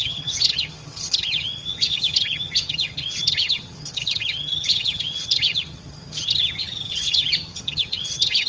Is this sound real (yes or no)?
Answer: no